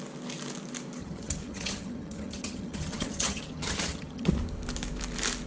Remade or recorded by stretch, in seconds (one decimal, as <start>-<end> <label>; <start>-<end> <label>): 0.0-1.0 recorded; 1.0-4.3 remade; 4.3-5.5 recorded